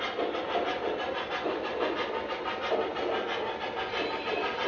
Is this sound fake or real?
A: real